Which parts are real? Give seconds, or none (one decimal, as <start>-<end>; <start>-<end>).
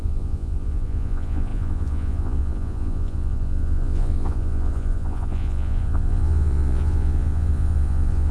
none